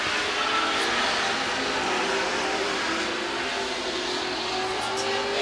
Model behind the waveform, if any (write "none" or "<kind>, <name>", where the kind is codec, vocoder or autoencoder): none